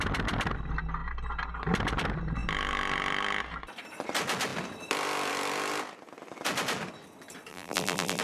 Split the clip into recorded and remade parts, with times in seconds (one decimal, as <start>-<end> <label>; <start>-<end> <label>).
0.0-7.5 recorded; 7.5-8.2 remade